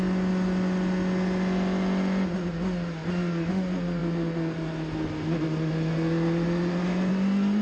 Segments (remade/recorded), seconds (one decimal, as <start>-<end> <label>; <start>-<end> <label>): 0.0-7.6 recorded